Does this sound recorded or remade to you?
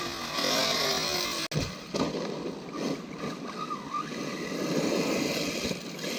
recorded